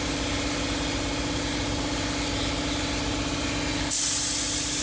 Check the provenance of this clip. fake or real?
real